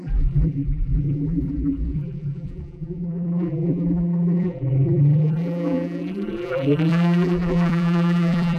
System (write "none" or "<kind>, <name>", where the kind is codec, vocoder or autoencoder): vocoder, BigVGAN v2